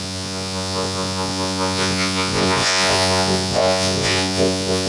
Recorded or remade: remade